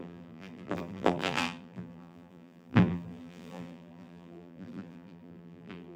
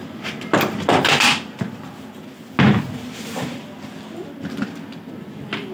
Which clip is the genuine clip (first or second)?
second